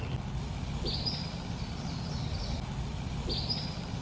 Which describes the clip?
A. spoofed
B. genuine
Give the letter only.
B